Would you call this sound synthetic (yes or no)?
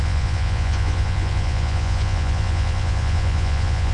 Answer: yes